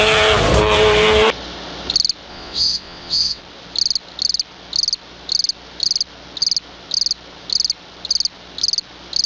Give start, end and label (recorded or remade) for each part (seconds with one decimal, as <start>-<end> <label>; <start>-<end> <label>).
0.0-2.3 recorded; 2.3-3.4 remade; 3.4-9.3 recorded